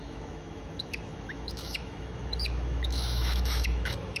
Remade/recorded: remade